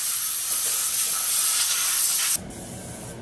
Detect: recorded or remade recorded